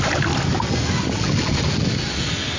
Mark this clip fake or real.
real